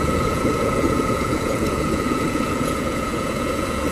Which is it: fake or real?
fake